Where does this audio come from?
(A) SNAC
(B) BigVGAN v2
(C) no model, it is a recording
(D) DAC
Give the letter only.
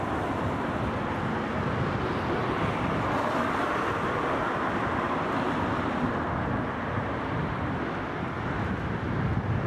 C